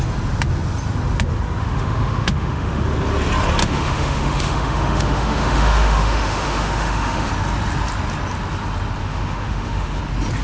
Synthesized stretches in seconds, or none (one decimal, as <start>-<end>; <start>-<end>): 1.6-2.8; 3.6-7.3; 9.0-10.0